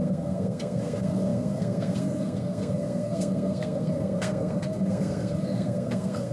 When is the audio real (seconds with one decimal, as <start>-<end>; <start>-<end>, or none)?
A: none